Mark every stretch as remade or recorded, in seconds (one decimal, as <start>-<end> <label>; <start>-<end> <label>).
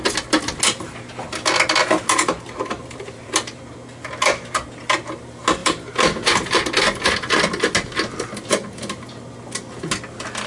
0.0-1.8 recorded; 1.8-3.6 remade; 3.6-5.6 recorded; 5.6-6.6 remade; 6.6-10.5 recorded